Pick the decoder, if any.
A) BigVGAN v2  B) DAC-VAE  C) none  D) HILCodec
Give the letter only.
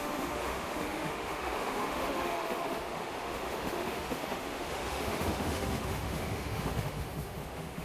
B